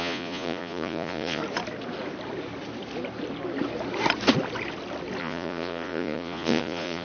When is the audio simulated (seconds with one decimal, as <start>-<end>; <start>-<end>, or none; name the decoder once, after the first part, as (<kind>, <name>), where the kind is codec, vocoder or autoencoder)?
0.0-1.4 (vocoder, Vocos); 5.2-7.0